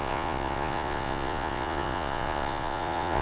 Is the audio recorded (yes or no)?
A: no